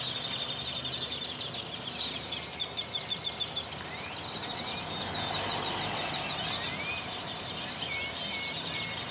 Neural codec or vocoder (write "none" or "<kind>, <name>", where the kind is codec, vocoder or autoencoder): none